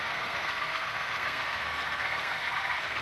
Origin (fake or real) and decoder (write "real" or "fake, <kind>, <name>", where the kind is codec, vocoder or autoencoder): fake, codec, SNAC